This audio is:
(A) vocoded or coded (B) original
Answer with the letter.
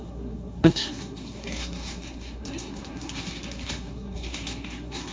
A